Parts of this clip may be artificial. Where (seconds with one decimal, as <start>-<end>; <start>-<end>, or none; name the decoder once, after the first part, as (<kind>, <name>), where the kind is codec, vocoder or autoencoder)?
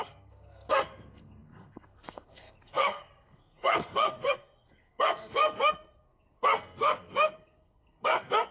0.0-8.5 (codec, SNAC)